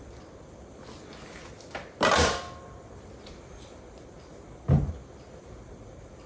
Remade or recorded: recorded